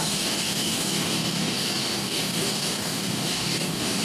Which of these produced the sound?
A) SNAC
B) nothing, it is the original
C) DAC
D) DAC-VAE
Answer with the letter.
C